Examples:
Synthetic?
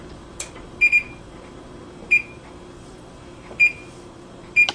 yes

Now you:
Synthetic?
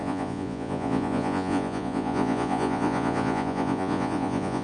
yes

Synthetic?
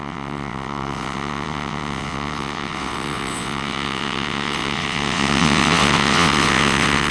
yes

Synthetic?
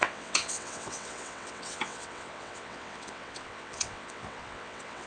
yes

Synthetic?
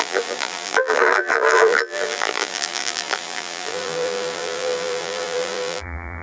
yes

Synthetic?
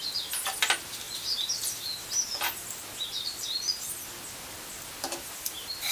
no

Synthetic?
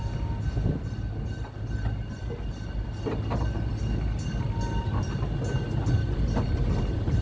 no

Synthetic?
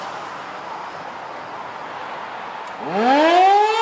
no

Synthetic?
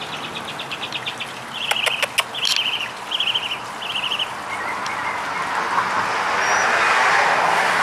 no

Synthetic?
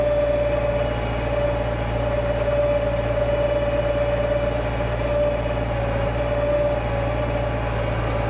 no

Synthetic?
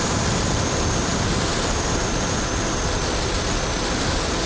no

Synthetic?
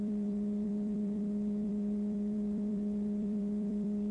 yes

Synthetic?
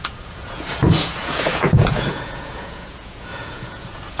yes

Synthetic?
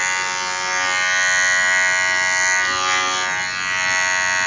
no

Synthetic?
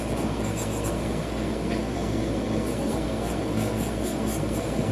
yes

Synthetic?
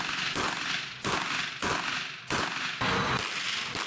no